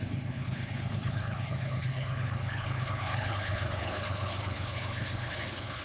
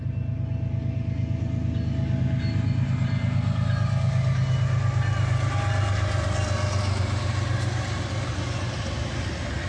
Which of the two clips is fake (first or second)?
first